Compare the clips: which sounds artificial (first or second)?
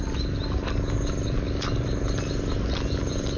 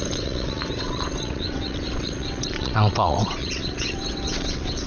second